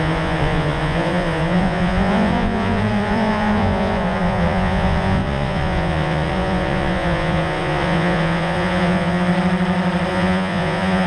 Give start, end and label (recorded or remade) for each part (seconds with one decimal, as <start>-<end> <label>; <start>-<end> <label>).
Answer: 0.0-9.3 remade; 9.3-10.1 recorded; 10.1-11.1 remade